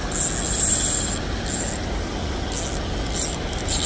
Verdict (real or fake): real